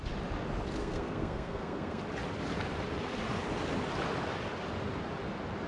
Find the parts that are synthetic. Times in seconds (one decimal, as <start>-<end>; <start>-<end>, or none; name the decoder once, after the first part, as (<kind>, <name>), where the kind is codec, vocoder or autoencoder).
0.8-2.0 (codec, SNAC)